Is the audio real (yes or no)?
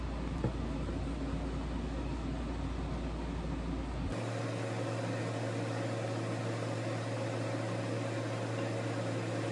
yes